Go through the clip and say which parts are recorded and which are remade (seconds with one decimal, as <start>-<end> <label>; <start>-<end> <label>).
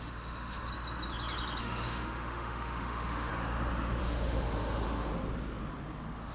0.0-0.7 remade; 0.7-1.6 recorded; 1.6-3.3 remade; 3.3-4.0 recorded; 4.0-5.1 remade; 5.1-6.3 recorded